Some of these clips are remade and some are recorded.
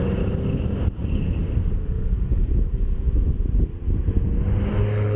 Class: recorded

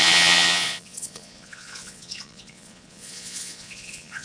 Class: remade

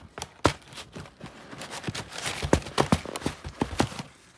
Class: recorded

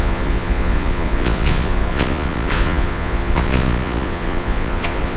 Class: remade